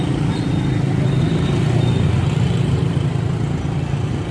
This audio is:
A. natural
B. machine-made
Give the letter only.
A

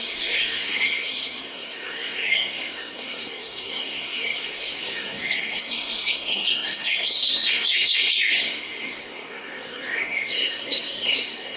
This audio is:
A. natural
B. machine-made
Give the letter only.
B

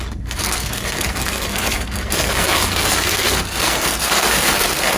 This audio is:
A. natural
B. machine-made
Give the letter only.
B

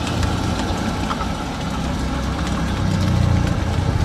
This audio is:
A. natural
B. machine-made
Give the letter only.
A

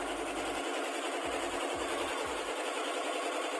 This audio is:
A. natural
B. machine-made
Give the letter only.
A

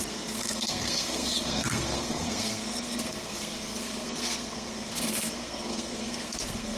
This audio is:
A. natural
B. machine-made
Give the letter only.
B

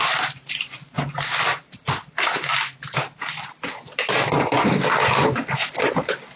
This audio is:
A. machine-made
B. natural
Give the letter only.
B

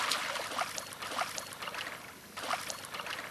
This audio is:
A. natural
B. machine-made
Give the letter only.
A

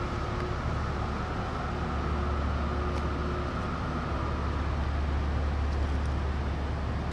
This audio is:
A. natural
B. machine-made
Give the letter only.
A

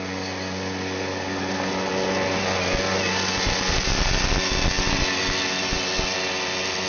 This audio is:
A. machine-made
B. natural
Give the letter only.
B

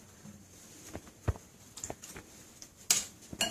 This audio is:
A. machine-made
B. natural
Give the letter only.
B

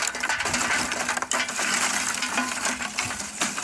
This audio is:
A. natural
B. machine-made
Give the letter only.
A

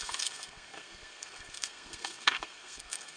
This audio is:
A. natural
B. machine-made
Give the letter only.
B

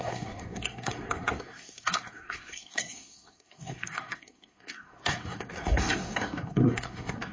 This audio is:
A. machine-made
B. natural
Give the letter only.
A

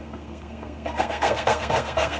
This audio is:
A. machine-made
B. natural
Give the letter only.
A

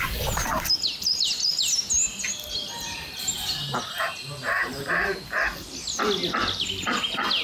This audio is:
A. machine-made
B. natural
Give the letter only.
B